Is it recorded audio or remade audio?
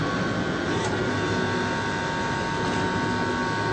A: recorded